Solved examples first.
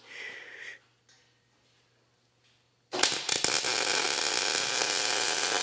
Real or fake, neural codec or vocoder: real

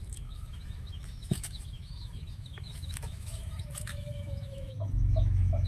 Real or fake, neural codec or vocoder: fake, autoencoder, DAC-VAE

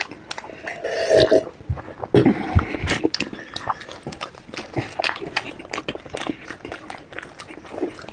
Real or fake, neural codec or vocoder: real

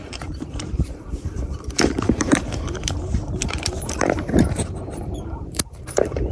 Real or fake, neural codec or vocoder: fake, vocoder, BigVGAN v2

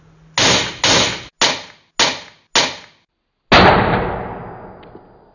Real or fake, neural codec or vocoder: real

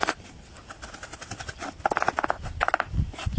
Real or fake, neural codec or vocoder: real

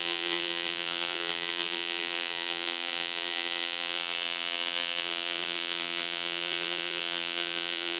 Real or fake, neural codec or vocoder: fake, vocoder, BigVGAN v2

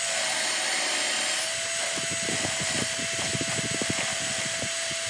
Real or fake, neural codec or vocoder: real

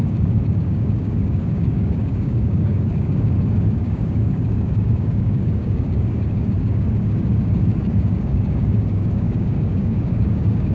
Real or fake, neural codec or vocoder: fake, codec, DAC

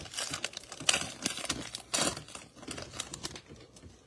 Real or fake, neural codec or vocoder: fake, vocoder, BigVGAN v2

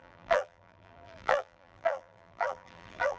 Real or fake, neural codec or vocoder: fake, vocoder, BigVGAN v2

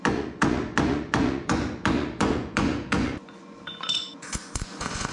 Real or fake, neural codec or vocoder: fake, vocoder, Vocos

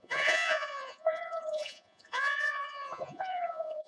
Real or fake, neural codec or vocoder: fake, vocoder, Vocos